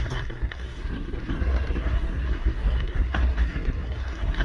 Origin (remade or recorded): remade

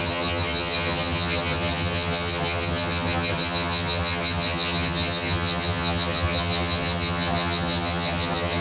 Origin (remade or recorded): remade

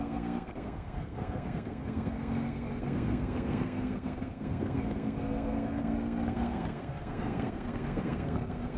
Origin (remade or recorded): remade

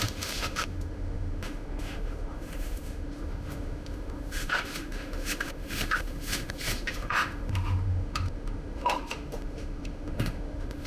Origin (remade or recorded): remade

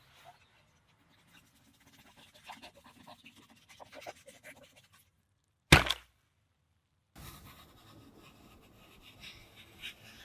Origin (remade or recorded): recorded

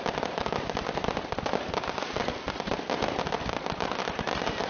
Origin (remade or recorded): recorded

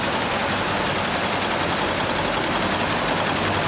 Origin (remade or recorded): recorded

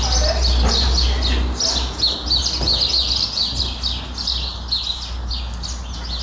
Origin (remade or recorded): recorded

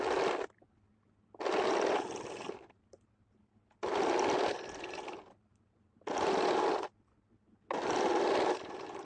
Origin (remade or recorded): recorded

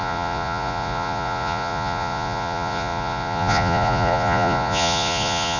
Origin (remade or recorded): remade